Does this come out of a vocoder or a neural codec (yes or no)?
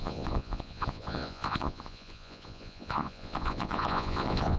yes